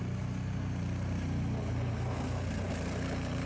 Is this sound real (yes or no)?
yes